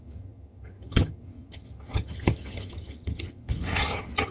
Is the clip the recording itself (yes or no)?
no